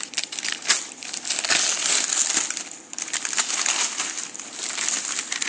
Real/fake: real